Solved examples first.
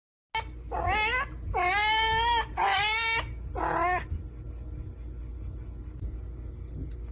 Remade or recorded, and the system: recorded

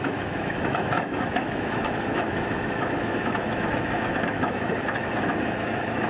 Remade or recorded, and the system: remade, autoencoder, DAC-VAE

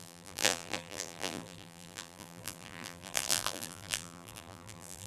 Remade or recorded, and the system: remade, vocoder, BigVGAN v2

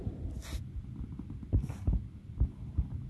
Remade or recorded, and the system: recorded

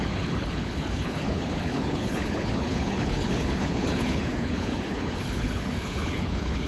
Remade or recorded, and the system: remade, codec, HILCodec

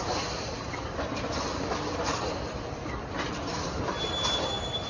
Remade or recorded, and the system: remade, vocoder, BigVGAN v2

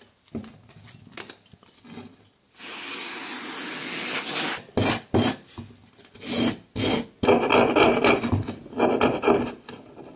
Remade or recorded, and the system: recorded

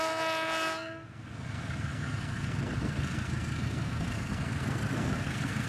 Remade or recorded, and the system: remade, codec, SNAC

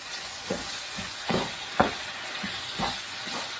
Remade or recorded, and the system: remade, vocoder, Vocos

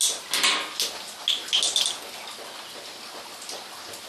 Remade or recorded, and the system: recorded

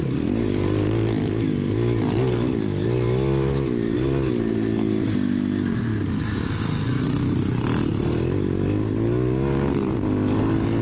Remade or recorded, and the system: recorded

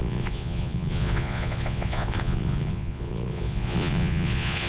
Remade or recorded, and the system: remade, vocoder, Vocos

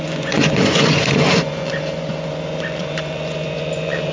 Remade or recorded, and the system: remade, vocoder, Vocos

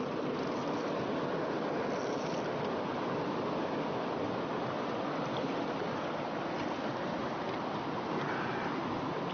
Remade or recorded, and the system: recorded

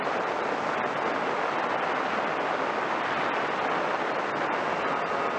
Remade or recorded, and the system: recorded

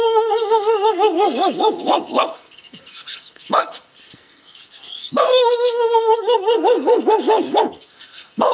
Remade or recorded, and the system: remade, codec, SNAC